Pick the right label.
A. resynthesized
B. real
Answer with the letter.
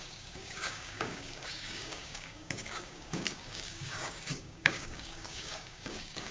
A